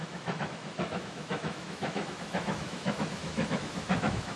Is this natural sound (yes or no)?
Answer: no